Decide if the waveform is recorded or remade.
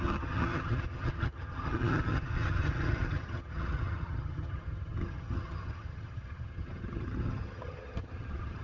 remade